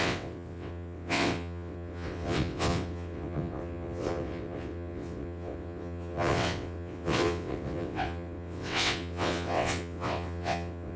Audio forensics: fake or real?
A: fake